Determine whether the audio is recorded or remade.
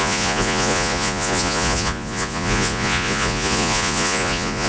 remade